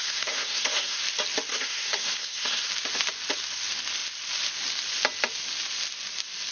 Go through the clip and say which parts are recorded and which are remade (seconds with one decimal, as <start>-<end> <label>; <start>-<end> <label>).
0.0-1.0 remade; 1.0-1.5 recorded; 1.5-2.7 remade; 2.7-6.5 recorded